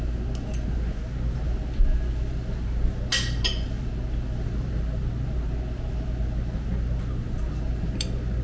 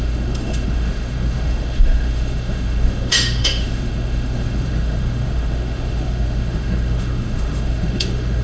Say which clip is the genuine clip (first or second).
first